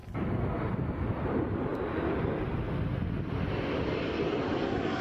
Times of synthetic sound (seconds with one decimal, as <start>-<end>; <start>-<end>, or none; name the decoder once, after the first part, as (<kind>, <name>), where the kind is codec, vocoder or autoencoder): none